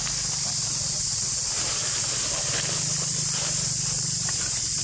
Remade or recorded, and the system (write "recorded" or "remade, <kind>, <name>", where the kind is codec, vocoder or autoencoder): recorded